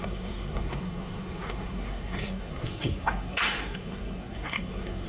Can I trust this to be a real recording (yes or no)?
no